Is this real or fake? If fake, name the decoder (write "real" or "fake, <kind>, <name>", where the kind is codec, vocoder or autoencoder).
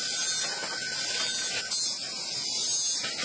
real